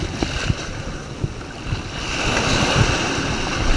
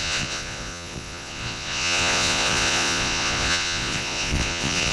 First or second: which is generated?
second